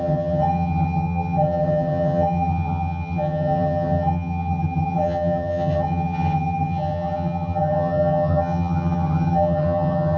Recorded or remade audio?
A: remade